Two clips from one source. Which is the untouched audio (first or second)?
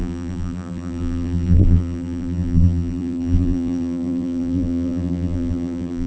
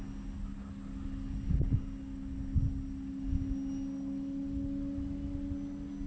second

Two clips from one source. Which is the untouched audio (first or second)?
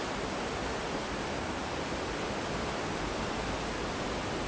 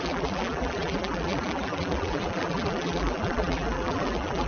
first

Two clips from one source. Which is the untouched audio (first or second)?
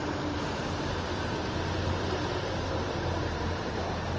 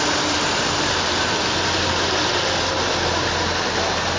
second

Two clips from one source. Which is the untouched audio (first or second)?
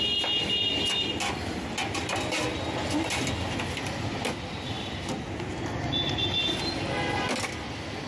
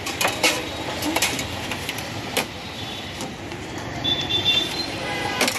first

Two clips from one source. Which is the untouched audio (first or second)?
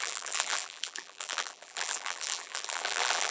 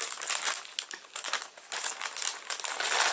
second